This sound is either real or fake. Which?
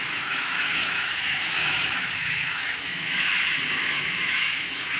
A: fake